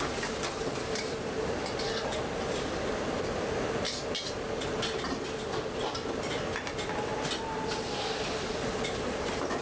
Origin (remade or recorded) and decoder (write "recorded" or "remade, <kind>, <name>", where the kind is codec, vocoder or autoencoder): recorded